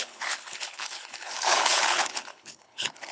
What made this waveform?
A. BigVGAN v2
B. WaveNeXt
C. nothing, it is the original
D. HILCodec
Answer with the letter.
D